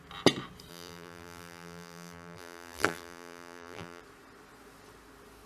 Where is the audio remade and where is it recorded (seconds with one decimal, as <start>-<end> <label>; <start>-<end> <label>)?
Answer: 0.0-0.7 recorded; 0.7-4.0 remade; 4.0-5.5 recorded